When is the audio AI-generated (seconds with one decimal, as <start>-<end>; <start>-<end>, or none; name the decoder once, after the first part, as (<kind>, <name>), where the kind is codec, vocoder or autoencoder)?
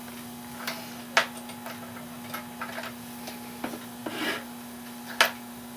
none